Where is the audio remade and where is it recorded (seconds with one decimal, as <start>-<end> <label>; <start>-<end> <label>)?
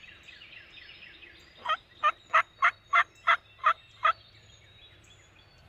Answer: 0.0-1.2 remade; 1.2-4.6 recorded; 4.6-5.7 remade